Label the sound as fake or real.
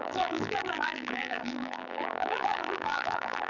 fake